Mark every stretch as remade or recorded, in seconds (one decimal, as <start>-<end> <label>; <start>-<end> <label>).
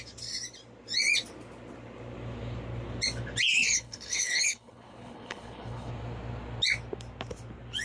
0.0-3.5 recorded; 3.5-5.9 remade; 5.9-7.8 recorded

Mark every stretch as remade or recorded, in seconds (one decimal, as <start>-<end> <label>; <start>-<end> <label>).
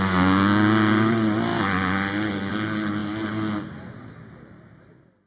0.0-5.3 recorded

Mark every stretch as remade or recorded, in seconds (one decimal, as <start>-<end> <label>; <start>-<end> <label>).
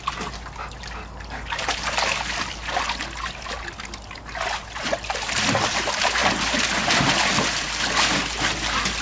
0.0-9.0 recorded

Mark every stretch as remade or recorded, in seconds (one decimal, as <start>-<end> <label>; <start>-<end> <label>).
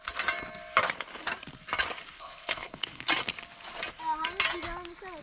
0.0-2.1 recorded; 2.1-3.0 remade; 3.0-5.2 recorded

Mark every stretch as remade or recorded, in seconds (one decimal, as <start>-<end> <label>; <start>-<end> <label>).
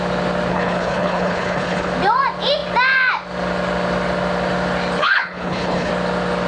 0.0-0.5 recorded; 0.5-1.9 remade; 1.9-5.0 recorded; 5.0-5.9 remade; 5.9-6.5 recorded